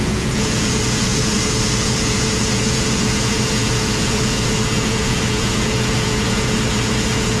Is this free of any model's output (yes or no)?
no